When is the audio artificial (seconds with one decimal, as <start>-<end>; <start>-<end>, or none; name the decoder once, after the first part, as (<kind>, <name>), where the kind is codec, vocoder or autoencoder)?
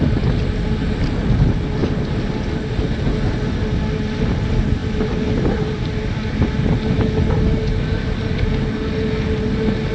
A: none